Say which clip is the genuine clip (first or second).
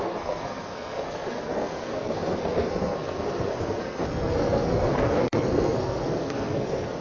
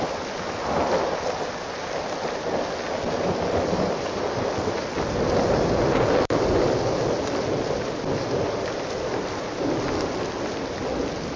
second